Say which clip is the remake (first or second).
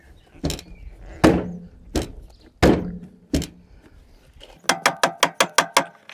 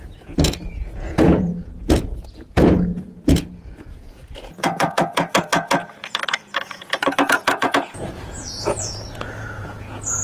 second